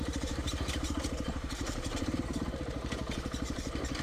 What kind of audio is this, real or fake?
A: fake